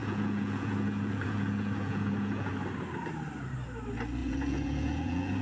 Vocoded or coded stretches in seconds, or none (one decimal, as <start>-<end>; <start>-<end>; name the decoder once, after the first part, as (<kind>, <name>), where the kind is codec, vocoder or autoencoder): 0.0-2.5 (vocoder, Vocos); 4.2-5.4